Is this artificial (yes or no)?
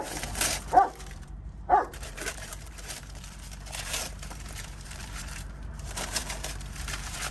yes